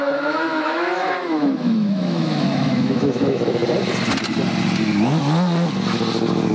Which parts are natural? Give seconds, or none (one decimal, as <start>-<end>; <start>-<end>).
3.6-6.5